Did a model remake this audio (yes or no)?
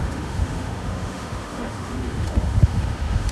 yes